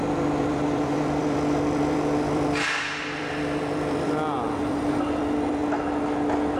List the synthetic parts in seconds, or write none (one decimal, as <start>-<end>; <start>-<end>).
0.0-5.6